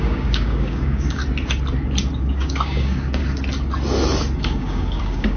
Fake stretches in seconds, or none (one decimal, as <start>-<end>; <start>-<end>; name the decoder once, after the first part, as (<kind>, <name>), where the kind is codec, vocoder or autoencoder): 0.0-1.2 (codec, DAC); 2.2-3.2; 4.4-5.4